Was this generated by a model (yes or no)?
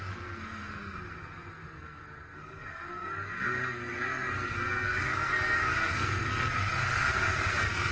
yes